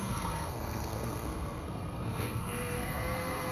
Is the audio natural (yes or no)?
no